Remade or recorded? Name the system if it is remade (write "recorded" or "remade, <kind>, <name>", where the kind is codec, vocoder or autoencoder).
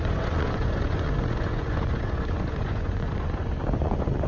remade, vocoder, Vocos